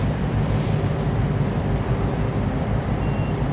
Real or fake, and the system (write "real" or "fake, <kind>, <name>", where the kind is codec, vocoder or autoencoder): fake, vocoder, BigVGAN v2